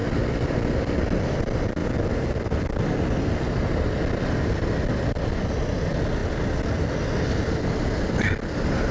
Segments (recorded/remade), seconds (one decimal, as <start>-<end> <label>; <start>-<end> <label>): 0.0-8.9 recorded